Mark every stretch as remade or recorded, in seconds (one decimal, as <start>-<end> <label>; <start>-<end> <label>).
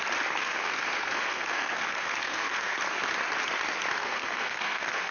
0.0-0.4 recorded; 0.4-2.8 remade; 2.8-4.0 recorded; 4.0-5.1 remade